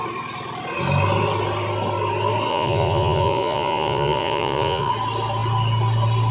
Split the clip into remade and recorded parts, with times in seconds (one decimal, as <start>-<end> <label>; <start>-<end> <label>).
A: 0.0-2.5 recorded; 2.5-4.9 remade; 4.9-6.3 recorded